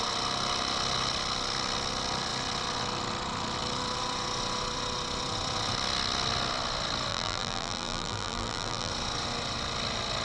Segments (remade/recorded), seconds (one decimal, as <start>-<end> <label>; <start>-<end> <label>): 0.0-7.1 recorded; 7.1-8.9 remade; 8.9-10.2 recorded